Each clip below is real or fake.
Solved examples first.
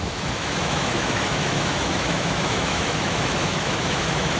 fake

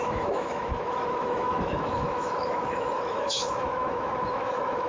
fake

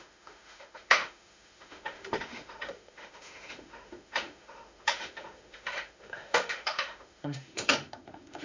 fake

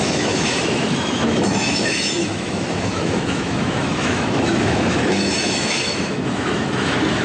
fake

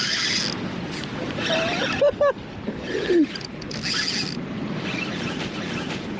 real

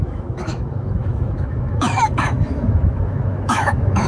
fake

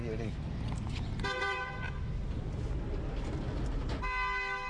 real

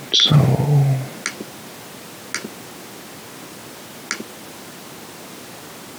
real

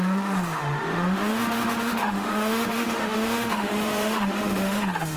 fake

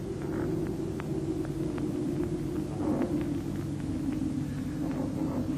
real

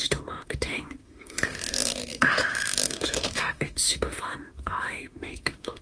fake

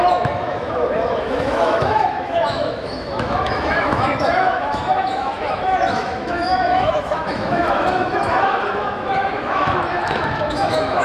fake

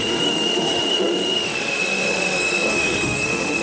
fake